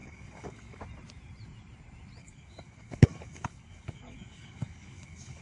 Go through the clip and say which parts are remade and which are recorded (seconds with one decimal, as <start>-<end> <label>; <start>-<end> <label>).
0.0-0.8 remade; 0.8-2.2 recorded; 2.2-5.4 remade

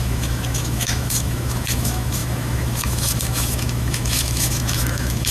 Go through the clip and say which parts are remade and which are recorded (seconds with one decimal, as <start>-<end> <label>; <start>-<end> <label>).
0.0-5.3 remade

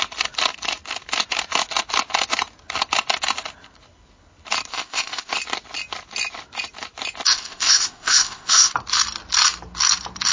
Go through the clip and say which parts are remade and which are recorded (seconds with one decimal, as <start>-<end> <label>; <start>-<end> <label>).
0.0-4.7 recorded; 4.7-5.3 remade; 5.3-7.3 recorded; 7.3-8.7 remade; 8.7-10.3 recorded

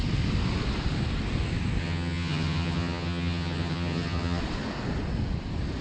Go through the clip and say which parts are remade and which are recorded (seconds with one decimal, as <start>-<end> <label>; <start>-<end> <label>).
0.0-1.8 recorded; 1.8-4.4 remade; 4.4-5.8 recorded

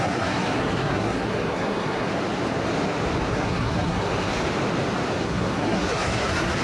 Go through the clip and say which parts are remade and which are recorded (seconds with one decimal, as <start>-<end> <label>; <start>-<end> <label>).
0.0-2.1 remade; 2.1-3.3 recorded; 3.3-4.3 remade; 4.3-5.2 recorded; 5.2-6.6 remade